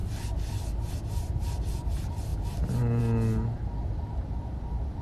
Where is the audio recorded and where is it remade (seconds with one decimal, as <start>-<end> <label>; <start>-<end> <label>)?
0.0-5.0 recorded